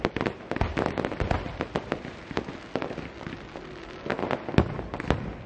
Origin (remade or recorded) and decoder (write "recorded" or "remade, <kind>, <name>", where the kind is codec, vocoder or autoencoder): recorded